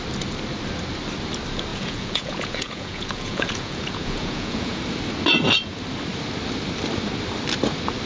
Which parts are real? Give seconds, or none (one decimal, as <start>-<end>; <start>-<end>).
0.0-1.7; 4.8-8.1

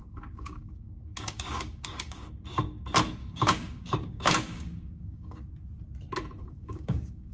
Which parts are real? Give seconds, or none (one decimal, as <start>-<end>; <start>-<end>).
2.3-3.2; 5.5-6.4